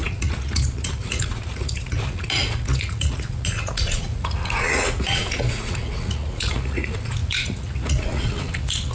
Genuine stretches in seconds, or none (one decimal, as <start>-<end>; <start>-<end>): none